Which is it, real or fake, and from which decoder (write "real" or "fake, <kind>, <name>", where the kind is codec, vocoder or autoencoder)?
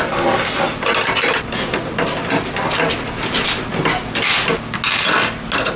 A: real